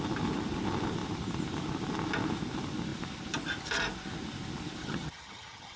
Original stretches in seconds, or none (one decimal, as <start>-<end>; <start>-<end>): 0.0-4.8